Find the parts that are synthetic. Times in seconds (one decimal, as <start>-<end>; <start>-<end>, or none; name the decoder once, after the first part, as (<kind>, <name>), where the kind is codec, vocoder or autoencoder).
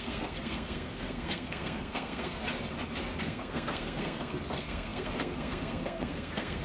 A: 0.0-2.4 (codec, SNAC); 3.2-6.6